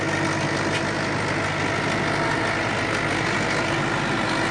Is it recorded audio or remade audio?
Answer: recorded